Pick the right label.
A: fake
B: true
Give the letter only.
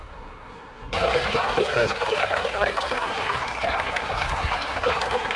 A